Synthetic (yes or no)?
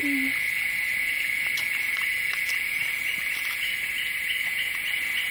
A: no